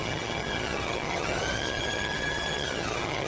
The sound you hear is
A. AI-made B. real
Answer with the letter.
A